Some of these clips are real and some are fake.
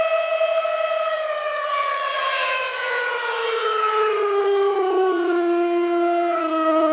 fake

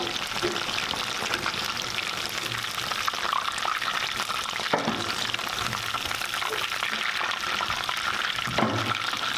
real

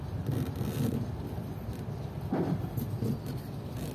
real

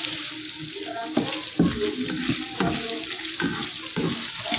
real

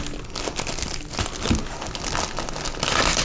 real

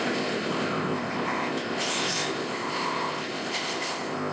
fake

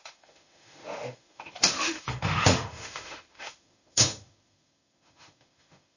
fake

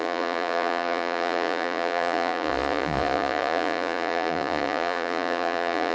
fake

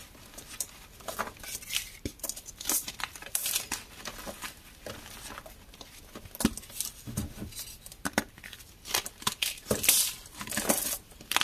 real